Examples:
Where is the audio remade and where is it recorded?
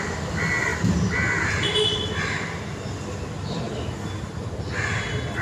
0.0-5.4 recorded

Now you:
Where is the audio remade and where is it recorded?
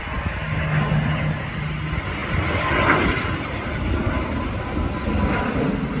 0.0-6.0 recorded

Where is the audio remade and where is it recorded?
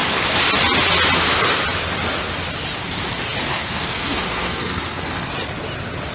0.0-3.5 recorded; 3.5-5.3 remade; 5.3-6.1 recorded